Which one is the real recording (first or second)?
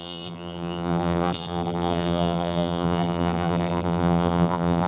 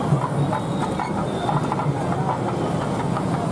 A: second